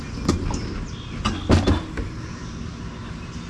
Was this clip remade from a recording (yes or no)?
no